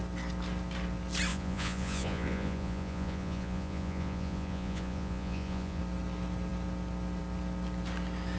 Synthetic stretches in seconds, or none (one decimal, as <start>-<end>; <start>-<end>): 1.3-5.8